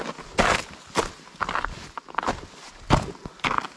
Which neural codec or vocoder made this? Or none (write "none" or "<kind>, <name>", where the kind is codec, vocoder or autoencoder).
none